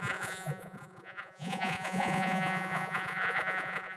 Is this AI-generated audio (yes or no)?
yes